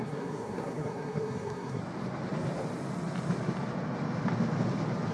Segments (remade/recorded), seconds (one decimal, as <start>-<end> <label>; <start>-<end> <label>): 0.0-1.8 remade; 1.8-5.1 recorded